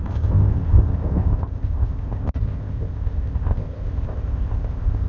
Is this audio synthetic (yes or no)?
yes